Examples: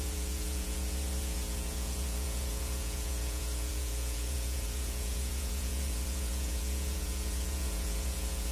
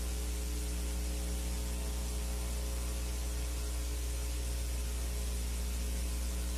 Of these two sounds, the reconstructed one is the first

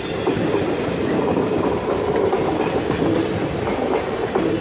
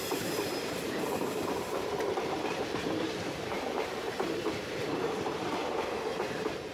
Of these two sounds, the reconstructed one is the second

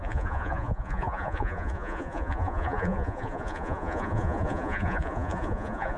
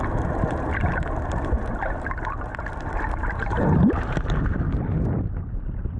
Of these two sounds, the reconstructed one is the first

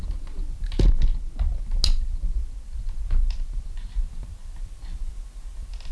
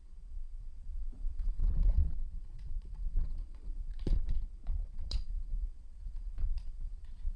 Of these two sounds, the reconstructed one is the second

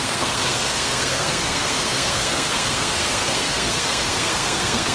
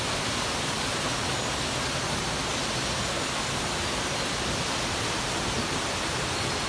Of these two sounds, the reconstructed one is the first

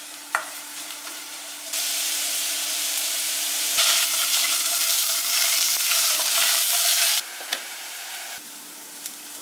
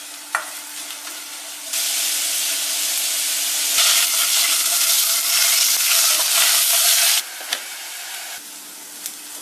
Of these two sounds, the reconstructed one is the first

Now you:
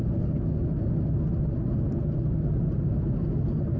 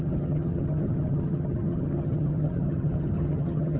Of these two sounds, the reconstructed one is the second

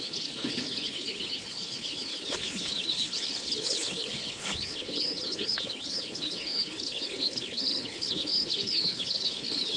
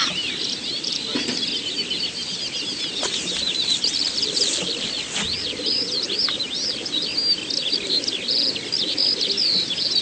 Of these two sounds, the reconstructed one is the first